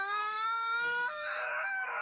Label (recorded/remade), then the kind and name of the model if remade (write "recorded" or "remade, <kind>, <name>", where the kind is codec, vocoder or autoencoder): remade, codec, DAC